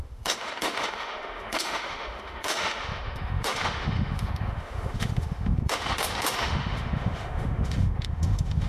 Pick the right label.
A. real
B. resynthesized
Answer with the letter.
B